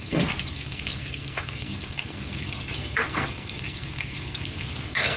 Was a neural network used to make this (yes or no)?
yes